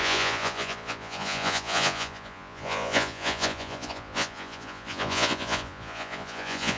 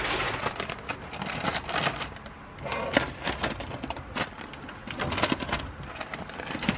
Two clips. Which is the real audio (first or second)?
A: second